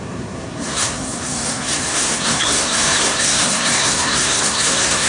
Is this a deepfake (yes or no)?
yes